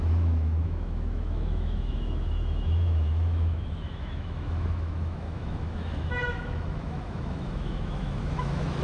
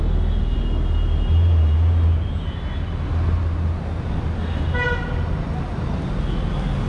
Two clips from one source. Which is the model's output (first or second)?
first